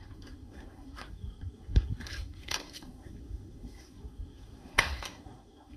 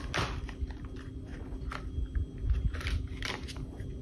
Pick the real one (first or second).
second